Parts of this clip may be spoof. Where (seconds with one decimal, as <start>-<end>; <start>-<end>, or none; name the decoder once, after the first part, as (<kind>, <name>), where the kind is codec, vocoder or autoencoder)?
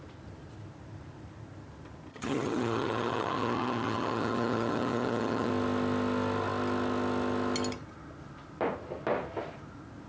2.1-5.5 (vocoder, HiFi-GAN)